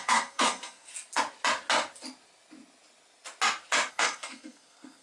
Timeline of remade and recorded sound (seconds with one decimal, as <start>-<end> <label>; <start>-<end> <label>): 0.0-0.9 remade; 0.9-3.9 recorded; 3.9-5.0 remade